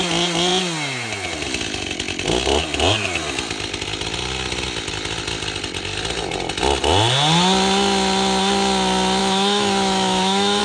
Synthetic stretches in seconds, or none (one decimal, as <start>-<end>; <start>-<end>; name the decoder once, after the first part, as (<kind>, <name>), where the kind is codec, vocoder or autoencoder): 9.2-10.6 (autoencoder, DAC-VAE)